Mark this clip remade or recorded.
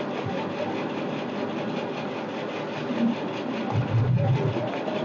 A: recorded